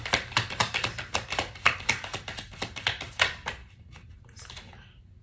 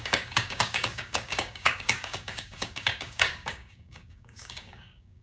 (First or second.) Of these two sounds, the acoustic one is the first